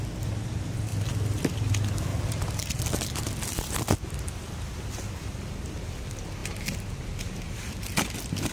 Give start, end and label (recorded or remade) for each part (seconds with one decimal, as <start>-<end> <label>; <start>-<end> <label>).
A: 0.0-2.1 recorded; 2.1-2.8 remade; 2.8-8.5 recorded